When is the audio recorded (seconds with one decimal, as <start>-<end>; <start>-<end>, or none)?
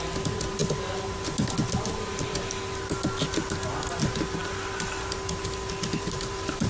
0.0-5.9